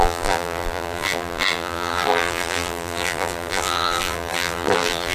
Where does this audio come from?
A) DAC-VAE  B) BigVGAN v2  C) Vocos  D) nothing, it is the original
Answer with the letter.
B